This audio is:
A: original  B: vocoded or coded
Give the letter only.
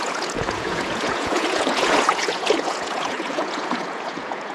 B